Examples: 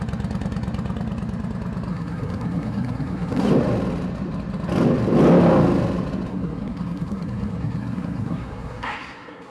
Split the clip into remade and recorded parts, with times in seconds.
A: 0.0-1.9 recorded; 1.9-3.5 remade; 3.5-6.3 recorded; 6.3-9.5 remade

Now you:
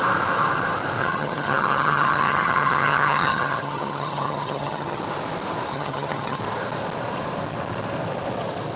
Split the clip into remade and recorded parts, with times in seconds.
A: 0.0-1.0 recorded; 1.0-5.0 remade; 5.0-5.7 recorded; 5.7-6.4 remade; 6.4-8.8 recorded